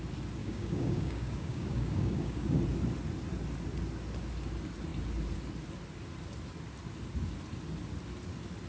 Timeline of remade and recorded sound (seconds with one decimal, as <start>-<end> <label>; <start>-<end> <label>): 0.0-0.4 recorded; 0.4-2.6 remade; 2.6-8.7 recorded